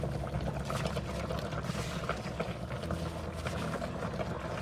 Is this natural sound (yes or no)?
yes